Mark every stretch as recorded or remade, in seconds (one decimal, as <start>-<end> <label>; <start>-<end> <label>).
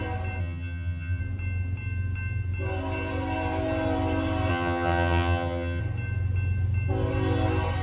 0.0-0.4 recorded; 0.4-1.2 remade; 1.2-4.5 recorded; 4.5-5.8 remade; 5.8-7.8 recorded